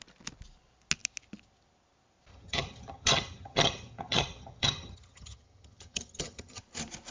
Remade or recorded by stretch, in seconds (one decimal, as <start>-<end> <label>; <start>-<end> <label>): 0.0-2.3 recorded; 2.3-6.6 remade; 6.6-7.1 recorded